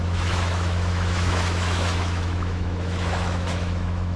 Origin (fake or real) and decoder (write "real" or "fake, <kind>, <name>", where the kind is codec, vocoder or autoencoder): fake, autoencoder, DAC-VAE